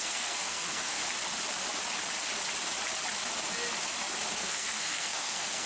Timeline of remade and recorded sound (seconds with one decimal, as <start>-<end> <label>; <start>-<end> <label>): 0.0-1.0 remade; 1.0-4.4 recorded; 4.4-5.7 remade